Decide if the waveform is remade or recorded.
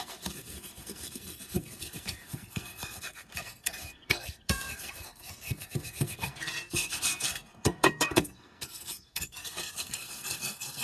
remade